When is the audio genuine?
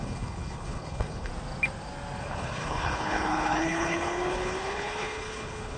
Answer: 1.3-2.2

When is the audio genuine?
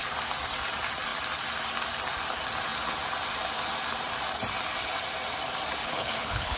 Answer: 0.0-5.8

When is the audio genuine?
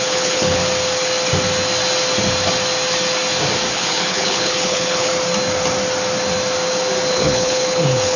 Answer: 0.6-3.7; 5.1-7.1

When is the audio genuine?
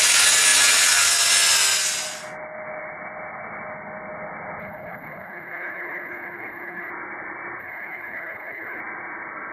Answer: 0.0-4.6; 6.9-7.6; 8.8-9.5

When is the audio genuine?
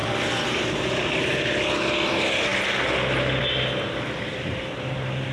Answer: 0.0-5.3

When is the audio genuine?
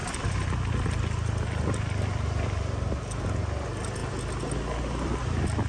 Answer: 0.0-5.7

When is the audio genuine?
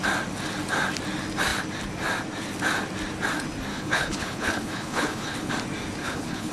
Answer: 0.0-3.7; 5.5-6.0